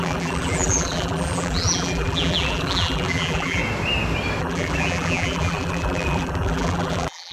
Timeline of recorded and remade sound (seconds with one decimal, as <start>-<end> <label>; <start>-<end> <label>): 0.0-3.6 remade; 3.6-4.4 recorded; 4.4-7.3 remade